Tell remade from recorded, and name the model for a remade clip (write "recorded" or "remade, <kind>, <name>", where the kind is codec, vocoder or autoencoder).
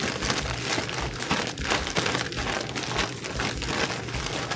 recorded